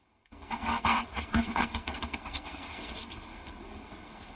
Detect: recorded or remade remade